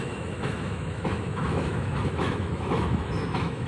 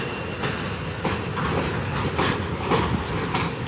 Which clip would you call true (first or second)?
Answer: second